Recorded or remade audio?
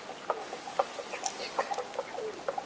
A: recorded